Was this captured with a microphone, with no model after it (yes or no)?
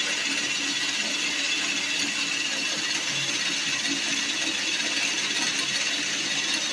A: yes